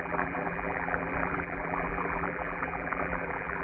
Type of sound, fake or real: fake